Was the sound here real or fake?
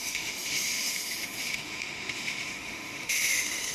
fake